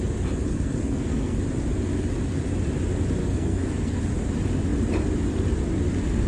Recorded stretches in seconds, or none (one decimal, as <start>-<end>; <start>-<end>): 0.0-0.5; 1.4-3.2; 4.0-6.3